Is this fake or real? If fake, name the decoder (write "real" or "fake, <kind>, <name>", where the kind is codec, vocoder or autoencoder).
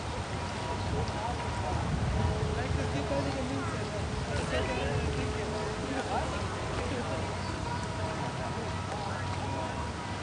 real